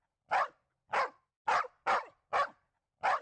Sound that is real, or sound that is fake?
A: real